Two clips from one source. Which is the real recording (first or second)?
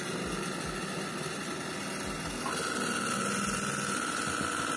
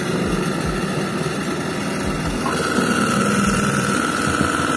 first